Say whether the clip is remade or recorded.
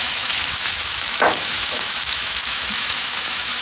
remade